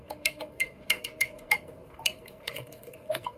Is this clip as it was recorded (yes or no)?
no